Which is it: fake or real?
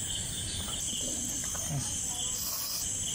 real